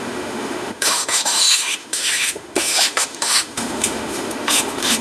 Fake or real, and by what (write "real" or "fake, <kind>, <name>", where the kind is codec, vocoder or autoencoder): fake, autoencoder, DAC-VAE